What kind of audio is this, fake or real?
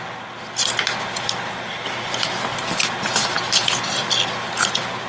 real